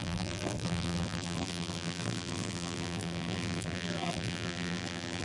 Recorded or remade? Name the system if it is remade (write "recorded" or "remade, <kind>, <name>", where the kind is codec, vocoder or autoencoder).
remade, vocoder, BigVGAN v2